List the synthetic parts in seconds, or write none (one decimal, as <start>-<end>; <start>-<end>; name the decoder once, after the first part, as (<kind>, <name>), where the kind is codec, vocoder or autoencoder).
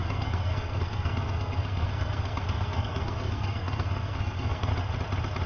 0.0-4.7 (codec, SNAC)